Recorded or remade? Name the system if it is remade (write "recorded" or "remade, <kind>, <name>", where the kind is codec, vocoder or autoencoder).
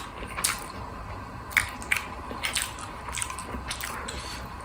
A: recorded